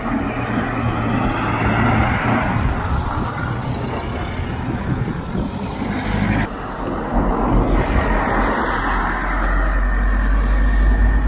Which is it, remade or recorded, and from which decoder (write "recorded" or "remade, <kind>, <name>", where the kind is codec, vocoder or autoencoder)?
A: recorded